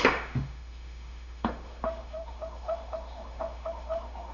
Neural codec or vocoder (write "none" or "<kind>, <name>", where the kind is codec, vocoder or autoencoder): autoencoder, DAC-VAE